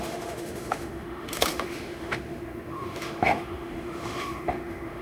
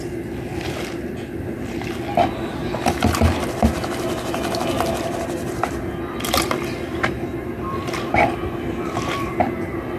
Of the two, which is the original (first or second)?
second